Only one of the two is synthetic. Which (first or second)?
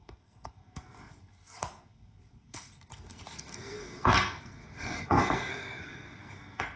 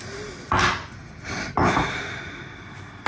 first